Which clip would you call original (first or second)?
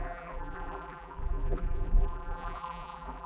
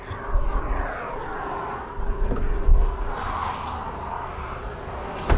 second